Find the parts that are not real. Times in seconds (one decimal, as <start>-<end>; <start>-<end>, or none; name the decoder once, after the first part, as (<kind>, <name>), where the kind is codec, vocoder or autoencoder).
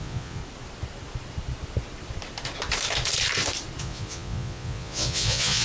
0.0-0.4 (vocoder, Vocos); 3.8-5.6